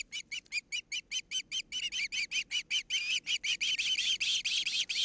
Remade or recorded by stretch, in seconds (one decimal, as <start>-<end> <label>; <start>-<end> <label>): 0.0-5.0 recorded